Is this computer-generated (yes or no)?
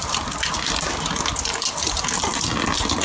no